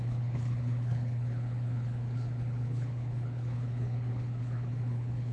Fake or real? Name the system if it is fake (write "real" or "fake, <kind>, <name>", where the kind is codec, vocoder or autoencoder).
fake, codec, HILCodec